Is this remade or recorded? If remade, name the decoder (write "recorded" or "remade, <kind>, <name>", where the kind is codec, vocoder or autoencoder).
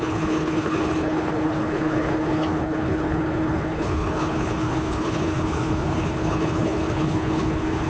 remade, codec, HILCodec